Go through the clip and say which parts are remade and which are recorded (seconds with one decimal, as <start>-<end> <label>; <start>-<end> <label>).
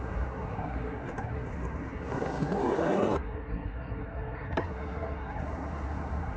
0.0-6.4 remade